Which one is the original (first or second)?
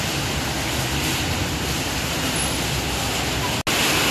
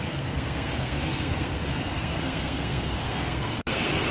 first